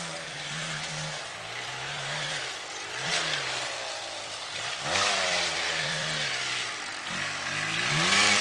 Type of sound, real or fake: fake